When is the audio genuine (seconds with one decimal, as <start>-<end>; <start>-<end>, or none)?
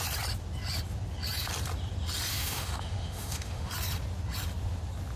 0.0-2.3; 3.7-5.2